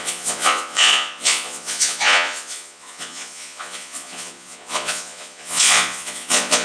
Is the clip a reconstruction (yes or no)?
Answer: yes